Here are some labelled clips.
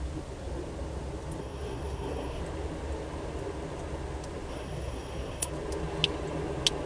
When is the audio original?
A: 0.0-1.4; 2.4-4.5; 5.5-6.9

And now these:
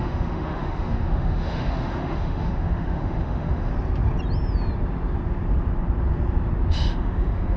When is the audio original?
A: 3.7-6.7

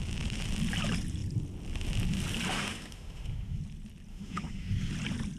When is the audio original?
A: 0.0-2.5; 3.6-4.1; 4.9-5.4

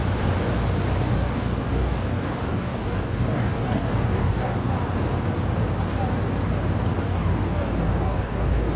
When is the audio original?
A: 0.0-1.0; 4.7-7.0

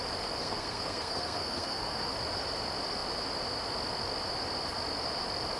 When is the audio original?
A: 0.0-0.4; 2.1-5.6

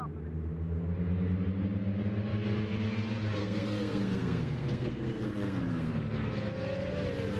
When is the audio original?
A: 0.0-3.4; 6.3-7.4

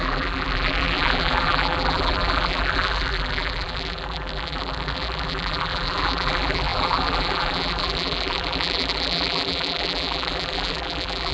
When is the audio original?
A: none